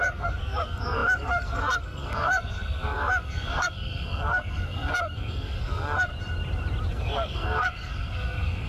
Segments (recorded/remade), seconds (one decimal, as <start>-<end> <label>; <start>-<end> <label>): 0.0-6.1 remade; 6.1-6.9 recorded; 6.9-8.7 remade